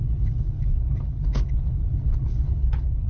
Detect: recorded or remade remade